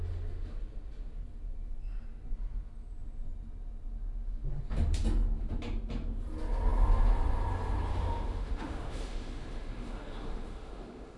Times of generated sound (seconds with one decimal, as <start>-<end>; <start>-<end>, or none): 7.9-11.2